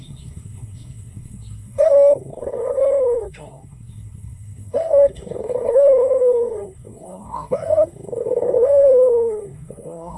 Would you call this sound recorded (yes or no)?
no